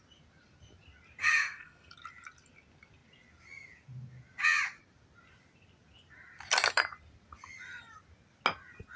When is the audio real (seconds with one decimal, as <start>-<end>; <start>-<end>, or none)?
0.0-1.2; 1.9-9.0